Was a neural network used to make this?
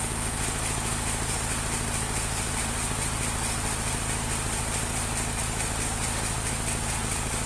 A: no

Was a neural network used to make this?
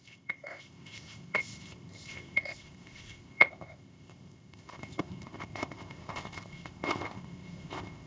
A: yes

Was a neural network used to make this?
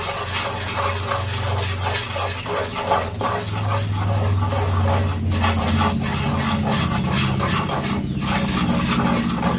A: no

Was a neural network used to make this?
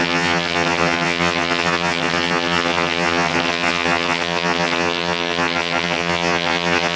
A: yes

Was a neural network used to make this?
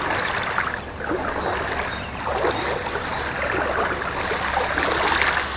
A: no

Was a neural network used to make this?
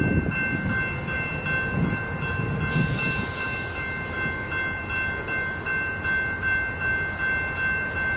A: no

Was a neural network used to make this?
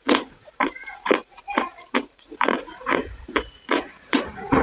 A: yes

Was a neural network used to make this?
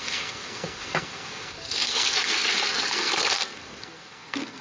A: yes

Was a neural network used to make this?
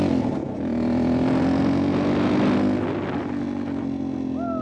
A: no